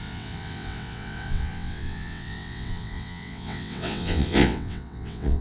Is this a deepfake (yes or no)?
yes